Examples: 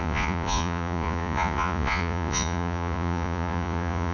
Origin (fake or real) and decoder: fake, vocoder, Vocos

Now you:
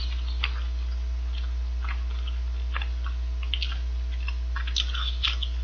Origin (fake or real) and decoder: real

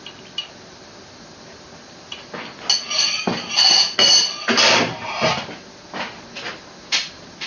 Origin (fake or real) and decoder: real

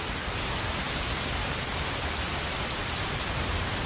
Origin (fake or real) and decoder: real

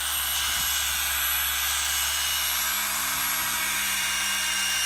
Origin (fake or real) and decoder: real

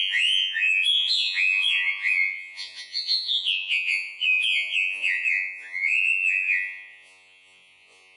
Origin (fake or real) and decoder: fake, vocoder, Vocos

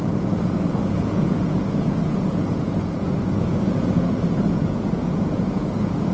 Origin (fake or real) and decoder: fake, vocoder, Vocos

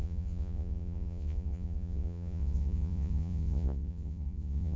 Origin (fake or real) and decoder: fake, vocoder, Vocos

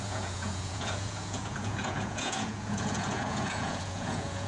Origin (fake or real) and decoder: fake, vocoder, Vocos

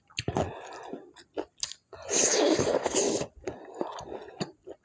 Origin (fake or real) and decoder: real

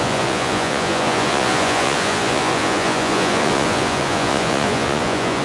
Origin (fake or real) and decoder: fake, vocoder, Vocos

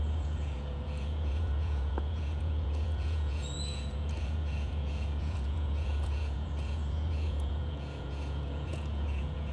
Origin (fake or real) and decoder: fake, vocoder, Vocos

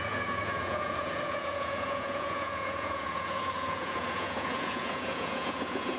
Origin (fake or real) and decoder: fake, vocoder, Vocos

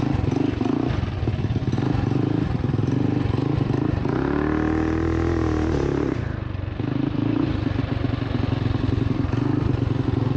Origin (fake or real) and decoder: real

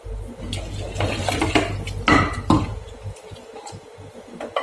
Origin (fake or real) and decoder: real